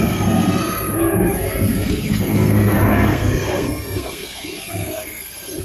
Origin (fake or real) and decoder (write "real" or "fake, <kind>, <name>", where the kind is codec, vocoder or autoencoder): fake, codec, SNAC